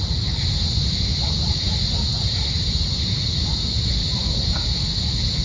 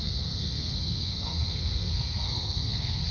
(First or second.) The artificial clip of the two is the second